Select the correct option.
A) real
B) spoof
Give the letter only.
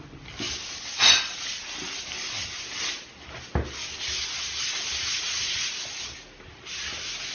A